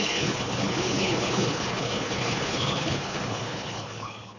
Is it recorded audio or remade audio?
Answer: remade